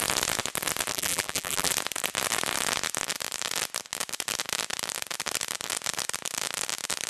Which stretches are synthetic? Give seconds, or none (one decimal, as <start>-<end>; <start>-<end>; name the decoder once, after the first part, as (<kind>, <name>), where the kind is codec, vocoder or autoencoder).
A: 0.9-1.7 (vocoder, BigVGAN v2)